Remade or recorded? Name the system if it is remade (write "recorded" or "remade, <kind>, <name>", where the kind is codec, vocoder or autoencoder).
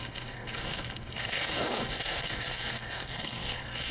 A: remade, codec, SNAC